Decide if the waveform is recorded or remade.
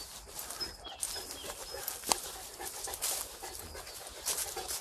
recorded